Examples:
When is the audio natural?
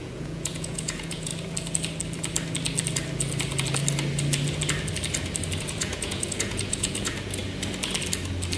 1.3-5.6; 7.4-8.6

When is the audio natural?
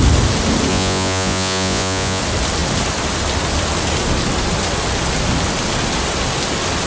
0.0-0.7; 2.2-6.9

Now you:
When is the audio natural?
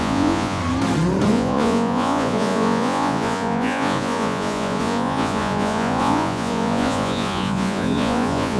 0.6-1.3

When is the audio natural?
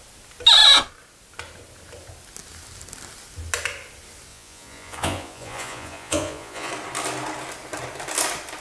0.0-4.3; 6.7-8.6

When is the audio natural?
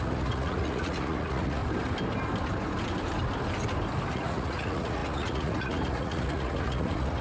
1.6-4.1